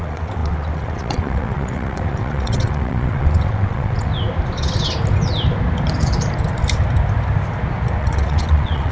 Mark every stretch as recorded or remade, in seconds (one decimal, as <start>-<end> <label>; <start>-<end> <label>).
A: 0.0-4.1 remade; 4.1-8.0 recorded; 8.0-8.9 remade